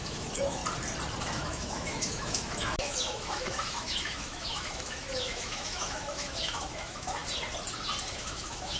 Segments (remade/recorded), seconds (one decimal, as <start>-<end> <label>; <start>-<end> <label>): 0.0-0.6 remade; 0.6-1.2 recorded; 1.2-7.2 remade; 7.2-8.1 recorded; 8.1-8.8 remade